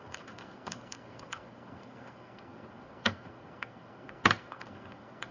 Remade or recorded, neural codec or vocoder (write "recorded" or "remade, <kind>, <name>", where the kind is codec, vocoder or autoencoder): remade, codec, SNAC